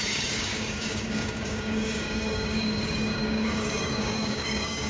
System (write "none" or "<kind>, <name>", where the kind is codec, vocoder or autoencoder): codec, DAC